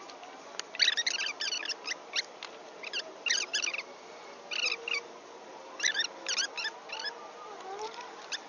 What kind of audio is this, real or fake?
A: real